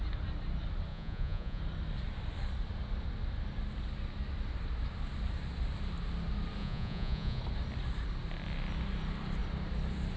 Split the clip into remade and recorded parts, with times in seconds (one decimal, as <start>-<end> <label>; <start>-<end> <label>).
0.0-0.9 recorded; 0.9-1.6 remade; 1.6-6.6 recorded; 6.6-7.4 remade; 7.4-10.2 recorded